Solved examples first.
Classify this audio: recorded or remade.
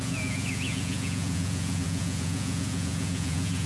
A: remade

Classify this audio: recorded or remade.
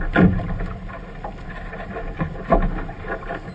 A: recorded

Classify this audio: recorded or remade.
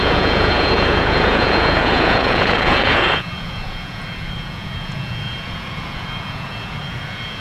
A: remade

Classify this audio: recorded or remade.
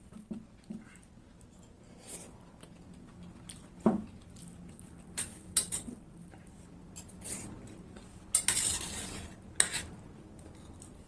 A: recorded